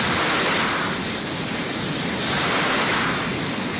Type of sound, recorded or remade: recorded